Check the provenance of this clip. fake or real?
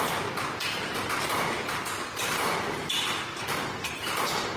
real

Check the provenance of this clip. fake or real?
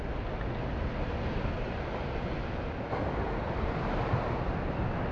real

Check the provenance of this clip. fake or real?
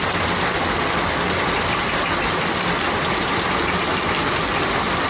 real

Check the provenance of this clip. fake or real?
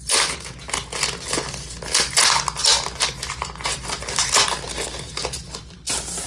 real